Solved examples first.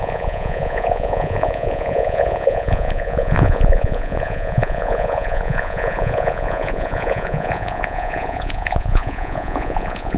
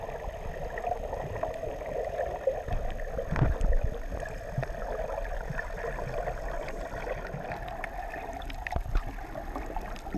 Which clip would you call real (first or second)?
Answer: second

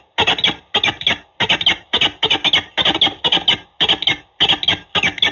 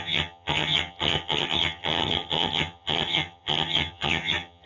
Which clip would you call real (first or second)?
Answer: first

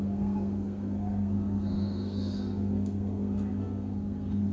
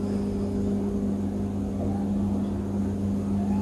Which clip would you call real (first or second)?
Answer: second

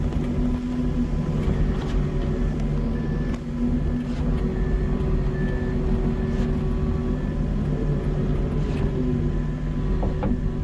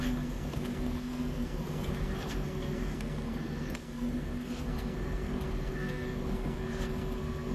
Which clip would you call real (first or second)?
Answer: first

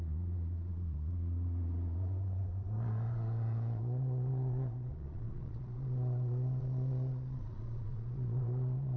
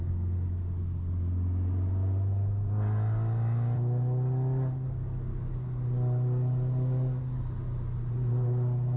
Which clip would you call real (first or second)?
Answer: second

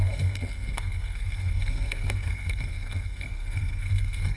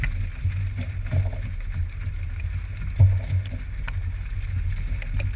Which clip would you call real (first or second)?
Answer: second